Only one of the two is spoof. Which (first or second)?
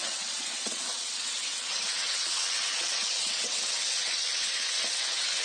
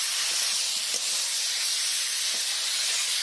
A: first